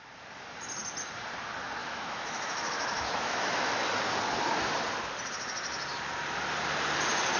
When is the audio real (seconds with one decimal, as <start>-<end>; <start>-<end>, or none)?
0.0-1.8; 3.6-7.4